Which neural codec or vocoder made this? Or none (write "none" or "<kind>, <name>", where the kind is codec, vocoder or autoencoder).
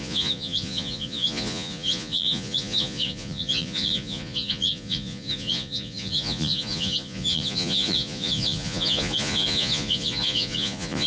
vocoder, Vocos